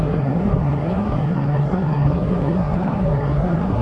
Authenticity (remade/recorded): remade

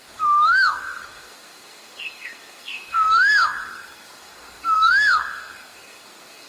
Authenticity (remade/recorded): remade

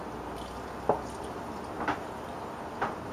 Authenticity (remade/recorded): recorded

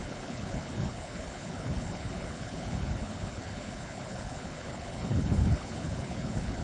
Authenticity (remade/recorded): remade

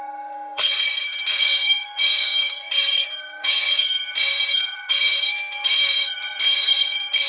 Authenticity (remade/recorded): remade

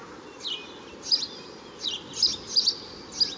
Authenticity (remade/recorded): recorded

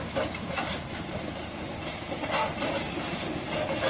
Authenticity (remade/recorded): recorded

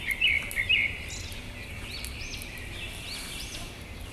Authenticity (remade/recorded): recorded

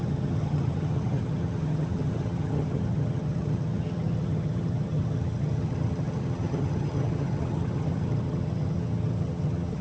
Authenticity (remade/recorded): remade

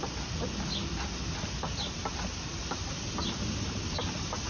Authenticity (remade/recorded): recorded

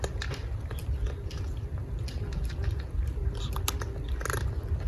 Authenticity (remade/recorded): recorded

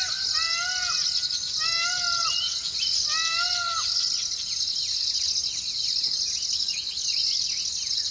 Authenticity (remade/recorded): recorded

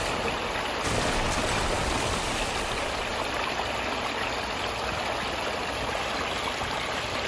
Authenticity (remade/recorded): recorded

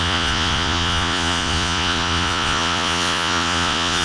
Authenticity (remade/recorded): remade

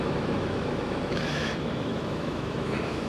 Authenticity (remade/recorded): remade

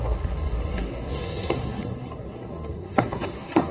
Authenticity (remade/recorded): remade